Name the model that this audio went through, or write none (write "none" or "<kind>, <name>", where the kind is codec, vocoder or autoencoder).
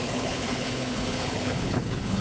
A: codec, HILCodec